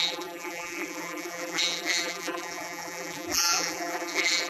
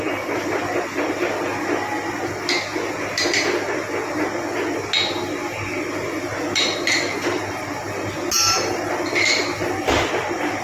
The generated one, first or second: first